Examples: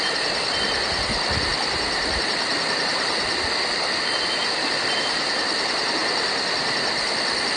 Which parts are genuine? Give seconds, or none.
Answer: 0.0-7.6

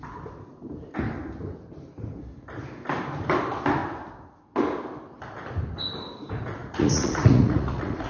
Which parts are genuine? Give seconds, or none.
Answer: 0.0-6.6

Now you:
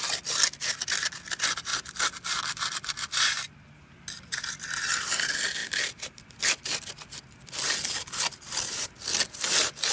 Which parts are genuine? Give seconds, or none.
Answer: 0.0-5.6; 6.4-9.9

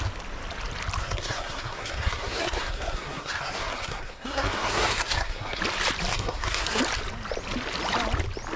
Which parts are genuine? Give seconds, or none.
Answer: 0.0-1.0; 5.6-6.1; 6.8-8.6

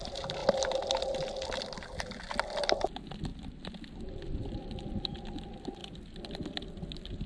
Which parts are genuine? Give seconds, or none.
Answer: 0.0-7.3

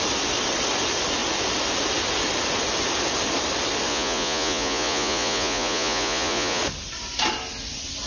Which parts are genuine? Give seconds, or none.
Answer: 0.0-3.9; 6.6-8.1

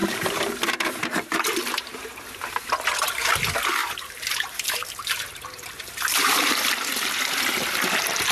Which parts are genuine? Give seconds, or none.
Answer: 2.7-3.8; 6.5-8.3

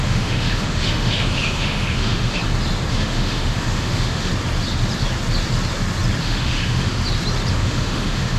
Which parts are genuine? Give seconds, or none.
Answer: 2.4-2.9; 4.3-6.2; 7.0-7.5